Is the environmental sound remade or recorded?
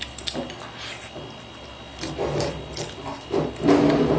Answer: recorded